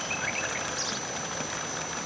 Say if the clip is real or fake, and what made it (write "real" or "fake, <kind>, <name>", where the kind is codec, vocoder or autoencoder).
real